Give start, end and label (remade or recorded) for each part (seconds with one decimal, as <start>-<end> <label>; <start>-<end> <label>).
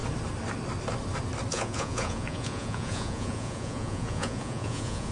0.0-1.5 recorded; 1.5-5.1 remade